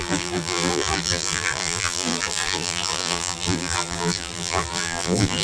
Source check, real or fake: fake